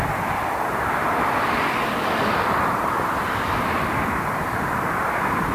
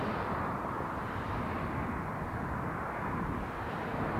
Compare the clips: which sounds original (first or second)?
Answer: second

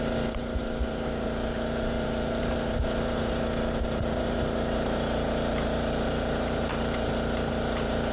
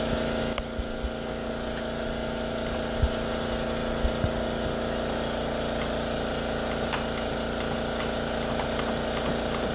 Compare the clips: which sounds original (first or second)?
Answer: second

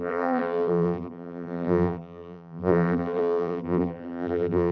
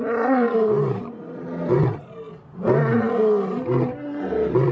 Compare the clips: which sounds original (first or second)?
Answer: second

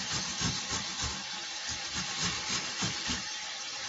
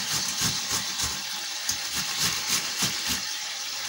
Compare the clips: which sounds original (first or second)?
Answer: second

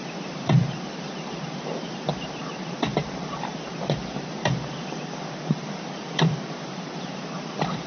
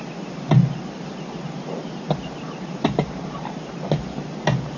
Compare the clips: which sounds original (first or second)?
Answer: second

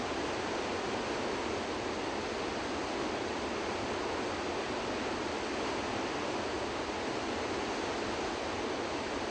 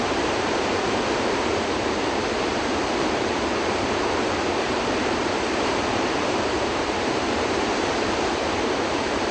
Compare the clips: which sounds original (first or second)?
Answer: first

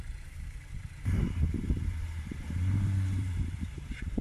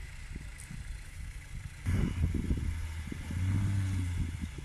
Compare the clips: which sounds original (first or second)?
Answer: second